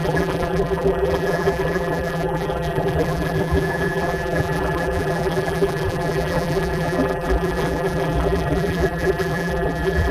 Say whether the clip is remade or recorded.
remade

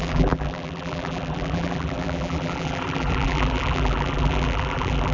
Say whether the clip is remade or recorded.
remade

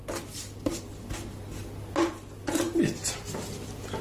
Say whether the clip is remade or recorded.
recorded